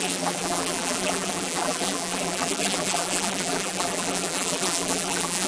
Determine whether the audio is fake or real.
fake